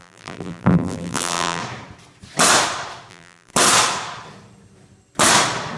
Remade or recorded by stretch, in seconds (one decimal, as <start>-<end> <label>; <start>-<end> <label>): 0.0-1.6 remade; 1.6-3.1 recorded; 3.1-3.5 remade; 3.5-5.8 recorded